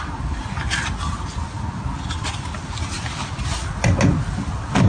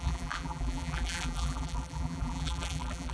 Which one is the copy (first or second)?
second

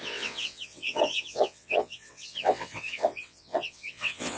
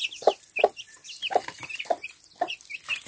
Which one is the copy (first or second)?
first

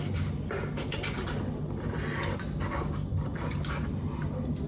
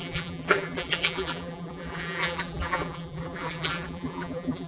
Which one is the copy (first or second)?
second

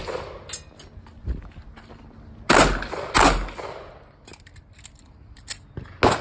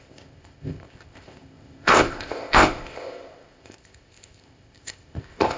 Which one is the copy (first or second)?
second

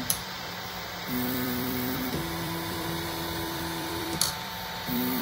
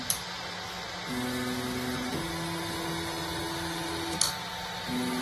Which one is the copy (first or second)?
first